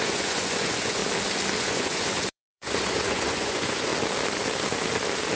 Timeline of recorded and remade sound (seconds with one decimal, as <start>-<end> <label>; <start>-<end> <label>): 0.0-1.0 remade; 1.0-1.6 recorded; 1.6-3.9 remade; 3.9-5.4 recorded